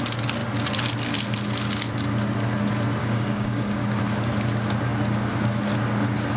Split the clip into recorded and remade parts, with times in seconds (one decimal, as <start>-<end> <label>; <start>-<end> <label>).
0.0-3.0 recorded; 3.0-4.0 remade; 4.0-6.4 recorded